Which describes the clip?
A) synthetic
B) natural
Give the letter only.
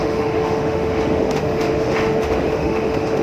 A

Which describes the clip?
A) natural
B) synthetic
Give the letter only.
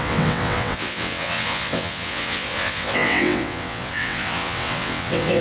B